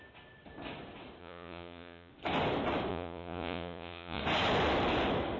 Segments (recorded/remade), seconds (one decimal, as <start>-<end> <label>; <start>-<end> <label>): 0.0-1.2 recorded; 1.2-2.1 remade; 2.1-2.9 recorded; 2.9-4.2 remade; 4.2-5.4 recorded